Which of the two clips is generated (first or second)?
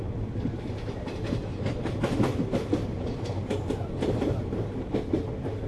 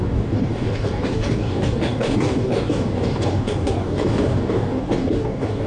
second